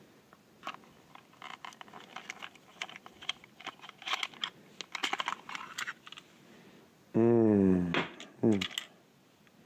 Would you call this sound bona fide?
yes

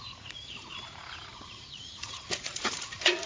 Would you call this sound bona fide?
no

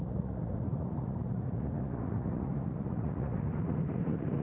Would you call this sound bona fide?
no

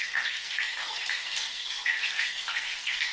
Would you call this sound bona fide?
no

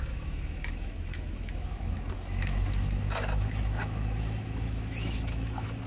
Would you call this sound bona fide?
no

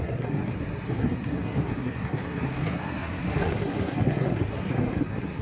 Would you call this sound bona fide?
no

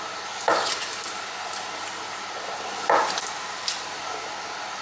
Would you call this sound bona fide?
yes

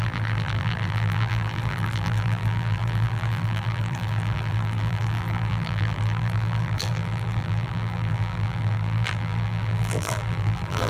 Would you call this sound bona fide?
no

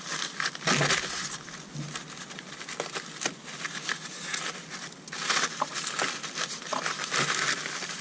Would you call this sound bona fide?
yes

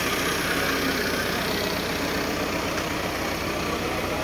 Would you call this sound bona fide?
yes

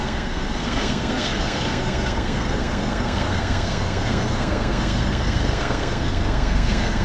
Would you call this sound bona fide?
no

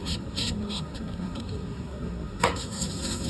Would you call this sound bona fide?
no